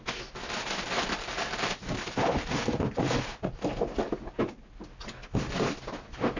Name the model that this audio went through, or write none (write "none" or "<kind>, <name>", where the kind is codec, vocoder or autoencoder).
none